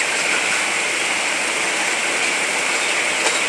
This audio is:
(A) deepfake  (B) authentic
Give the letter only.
B